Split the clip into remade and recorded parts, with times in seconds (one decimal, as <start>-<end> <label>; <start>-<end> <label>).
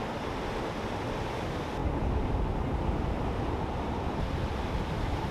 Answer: 0.0-5.3 recorded